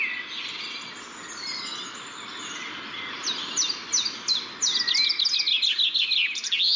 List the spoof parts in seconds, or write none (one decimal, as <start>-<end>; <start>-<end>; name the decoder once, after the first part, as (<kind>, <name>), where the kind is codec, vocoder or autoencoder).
none